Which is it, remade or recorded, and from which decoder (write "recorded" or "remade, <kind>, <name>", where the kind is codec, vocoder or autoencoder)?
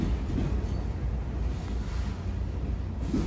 recorded